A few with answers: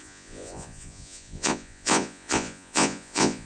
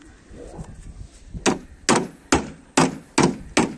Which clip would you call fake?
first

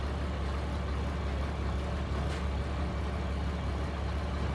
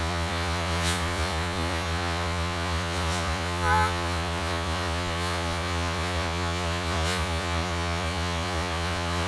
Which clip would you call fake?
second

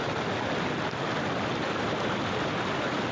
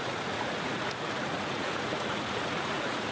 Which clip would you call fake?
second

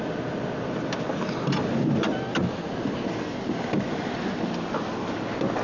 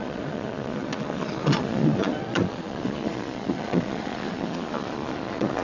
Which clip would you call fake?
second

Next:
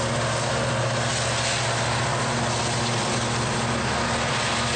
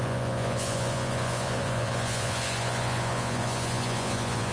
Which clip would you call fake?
second